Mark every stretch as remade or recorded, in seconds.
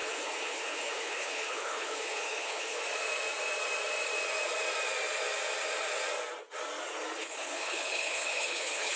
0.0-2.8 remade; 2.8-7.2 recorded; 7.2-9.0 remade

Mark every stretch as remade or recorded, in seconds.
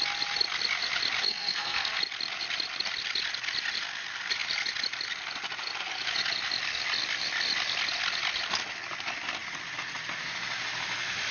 0.0-1.3 recorded; 1.3-2.0 remade; 2.0-11.3 recorded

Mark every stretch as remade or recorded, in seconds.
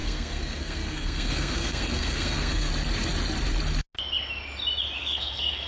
0.0-2.7 remade; 2.7-5.0 recorded; 5.0-5.7 remade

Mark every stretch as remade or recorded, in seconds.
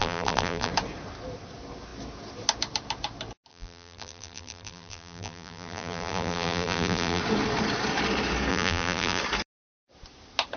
0.0-0.7 remade; 0.7-3.5 recorded; 3.5-7.2 remade; 7.2-8.5 recorded; 8.5-9.2 remade; 9.2-10.6 recorded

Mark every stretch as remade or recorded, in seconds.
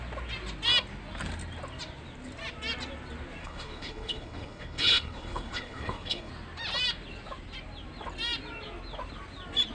0.0-3.4 recorded; 3.4-6.3 remade; 6.3-9.7 recorded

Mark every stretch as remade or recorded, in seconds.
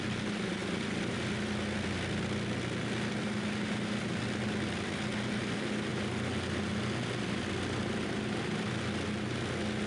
0.0-9.9 recorded